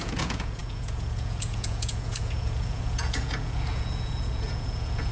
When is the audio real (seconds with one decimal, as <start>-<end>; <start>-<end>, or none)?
none